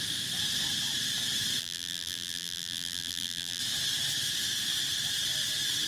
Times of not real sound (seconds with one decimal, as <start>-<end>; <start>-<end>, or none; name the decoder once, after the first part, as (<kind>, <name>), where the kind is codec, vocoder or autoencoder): 1.6-3.6 (vocoder, BigVGAN v2)